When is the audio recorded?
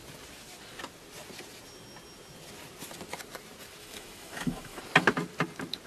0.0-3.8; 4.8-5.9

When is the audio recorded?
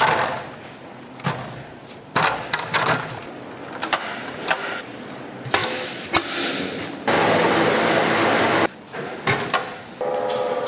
0.0-5.6; 6.1-10.7